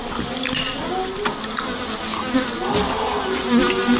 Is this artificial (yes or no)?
no